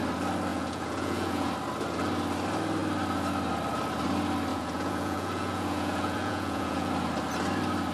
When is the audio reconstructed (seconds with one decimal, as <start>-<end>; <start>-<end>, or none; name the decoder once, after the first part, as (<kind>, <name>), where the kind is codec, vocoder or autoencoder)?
0.5-1.5 (vocoder, Vocos); 4.5-6.9